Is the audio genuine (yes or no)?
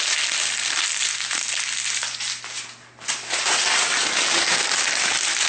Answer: yes